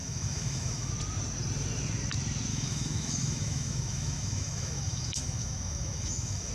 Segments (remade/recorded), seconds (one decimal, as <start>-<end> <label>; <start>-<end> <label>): 0.0-0.9 remade; 0.9-2.5 recorded; 2.5-6.5 remade